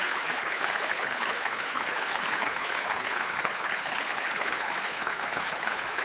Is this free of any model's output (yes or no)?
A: no